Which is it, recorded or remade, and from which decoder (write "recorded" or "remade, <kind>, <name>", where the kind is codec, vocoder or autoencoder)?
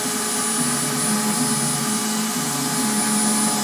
recorded